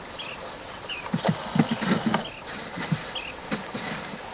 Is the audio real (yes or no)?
yes